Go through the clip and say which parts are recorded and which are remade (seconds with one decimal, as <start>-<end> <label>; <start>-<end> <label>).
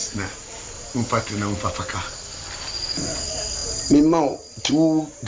0.0-5.3 recorded